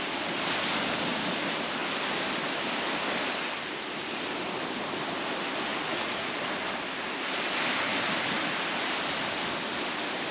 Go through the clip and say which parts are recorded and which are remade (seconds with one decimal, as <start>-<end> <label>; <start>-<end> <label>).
0.0-5.7 recorded; 5.7-6.3 remade; 6.3-10.3 recorded